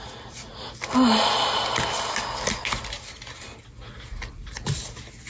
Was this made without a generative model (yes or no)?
yes